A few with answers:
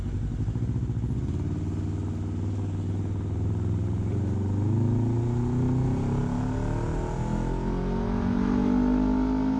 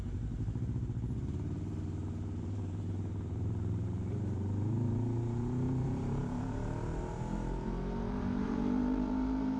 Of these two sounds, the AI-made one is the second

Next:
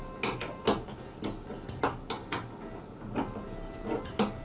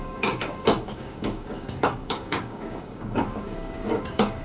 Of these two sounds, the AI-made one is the second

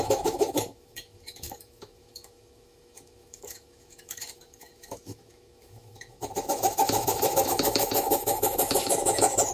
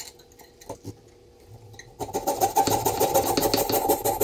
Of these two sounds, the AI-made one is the first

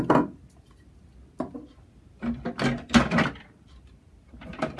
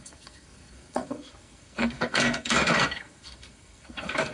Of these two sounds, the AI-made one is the second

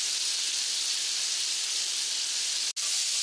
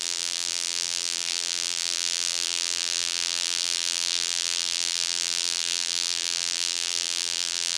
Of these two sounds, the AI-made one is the second